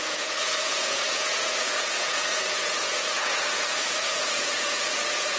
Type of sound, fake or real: fake